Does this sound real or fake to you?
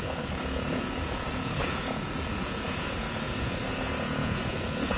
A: fake